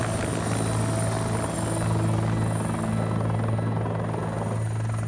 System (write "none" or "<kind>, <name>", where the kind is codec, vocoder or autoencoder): none